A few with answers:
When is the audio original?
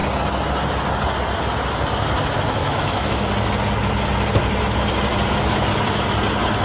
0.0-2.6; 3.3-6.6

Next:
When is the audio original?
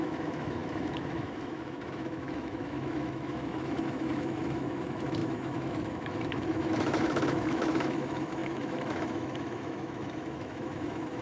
none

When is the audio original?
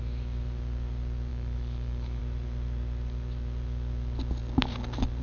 0.0-1.3; 2.2-5.2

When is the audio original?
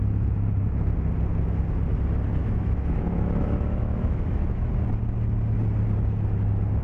0.0-2.4; 4.7-6.8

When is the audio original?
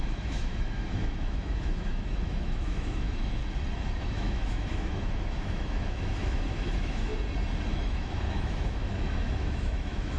3.4-4.0; 7.1-7.7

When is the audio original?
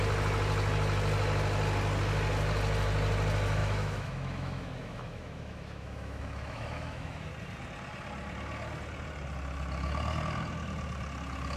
0.0-3.6; 7.3-11.6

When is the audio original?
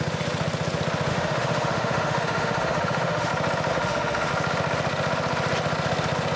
0.0-1.1; 3.3-3.7; 4.3-6.4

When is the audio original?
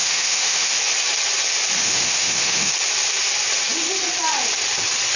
0.8-1.8; 2.7-5.2